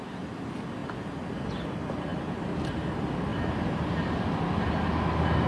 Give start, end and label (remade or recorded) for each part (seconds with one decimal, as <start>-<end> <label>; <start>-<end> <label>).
0.0-5.5 recorded